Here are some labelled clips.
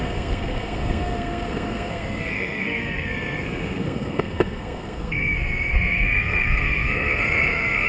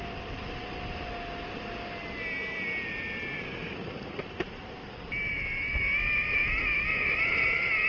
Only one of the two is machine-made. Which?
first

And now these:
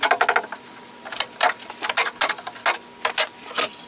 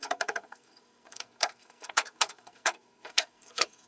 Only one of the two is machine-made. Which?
second